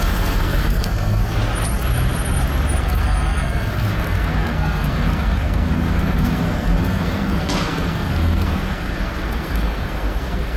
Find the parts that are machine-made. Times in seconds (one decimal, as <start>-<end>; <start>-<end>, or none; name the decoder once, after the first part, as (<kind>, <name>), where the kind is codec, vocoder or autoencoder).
0.0-1.4 (codec, SNAC); 2.8-10.6